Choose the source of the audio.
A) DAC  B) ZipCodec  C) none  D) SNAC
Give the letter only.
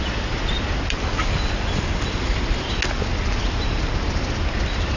C